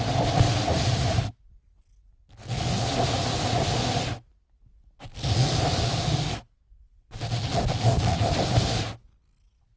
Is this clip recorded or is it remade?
recorded